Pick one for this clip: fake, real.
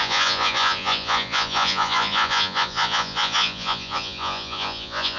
fake